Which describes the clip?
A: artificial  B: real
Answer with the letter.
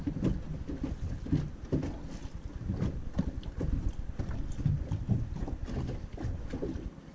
B